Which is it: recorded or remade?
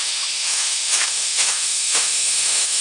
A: remade